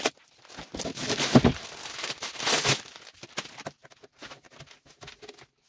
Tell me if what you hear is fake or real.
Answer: real